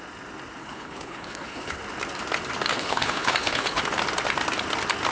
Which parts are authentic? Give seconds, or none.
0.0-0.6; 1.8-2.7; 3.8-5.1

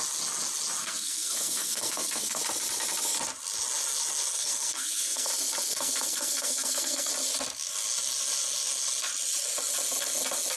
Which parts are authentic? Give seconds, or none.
0.0-0.8; 2.4-4.3; 5.3-5.7; 7.1-10.6

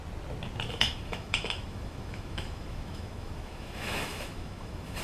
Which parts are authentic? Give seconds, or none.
0.0-0.7

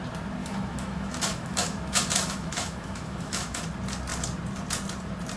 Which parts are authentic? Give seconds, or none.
0.0-0.4; 3.6-5.4

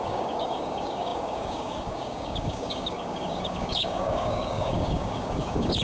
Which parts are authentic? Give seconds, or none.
none

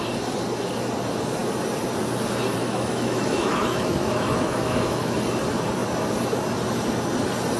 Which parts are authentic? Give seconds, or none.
0.0-2.6; 5.2-7.6

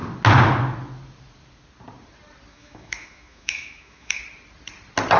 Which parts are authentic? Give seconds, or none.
0.0-2.5; 4.2-5.2